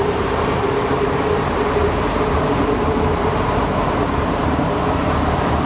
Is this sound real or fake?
fake